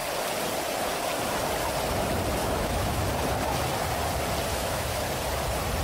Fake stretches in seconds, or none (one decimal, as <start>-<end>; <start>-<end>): 2.4-3.1; 4.5-5.0